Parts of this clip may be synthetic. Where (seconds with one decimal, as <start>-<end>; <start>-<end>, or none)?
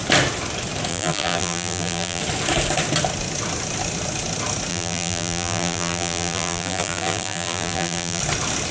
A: 0.9-2.2; 4.7-8.2